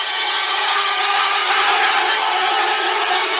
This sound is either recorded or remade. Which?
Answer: remade